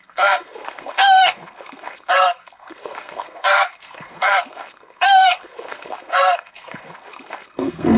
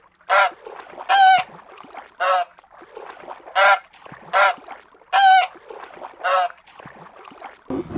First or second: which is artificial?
first